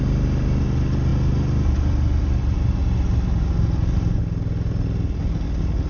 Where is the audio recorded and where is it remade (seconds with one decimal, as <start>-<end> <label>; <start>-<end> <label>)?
0.0-5.9 recorded